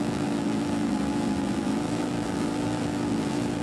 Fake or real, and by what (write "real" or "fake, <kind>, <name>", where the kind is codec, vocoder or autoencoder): fake, vocoder, BigVGAN v2